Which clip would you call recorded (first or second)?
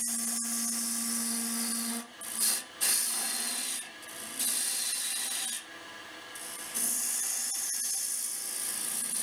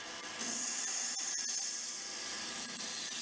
first